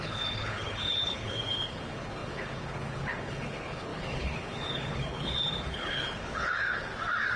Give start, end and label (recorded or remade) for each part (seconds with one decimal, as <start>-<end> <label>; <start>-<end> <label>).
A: 0.0-6.9 remade; 6.9-7.4 recorded